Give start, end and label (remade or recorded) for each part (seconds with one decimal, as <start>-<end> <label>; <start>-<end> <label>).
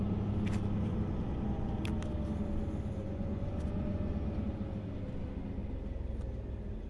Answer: 0.0-3.0 recorded; 3.0-4.1 remade; 4.1-6.9 recorded